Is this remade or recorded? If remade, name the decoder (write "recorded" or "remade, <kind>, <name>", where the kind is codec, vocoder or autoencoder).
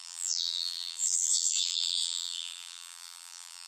remade, vocoder, BigVGAN v2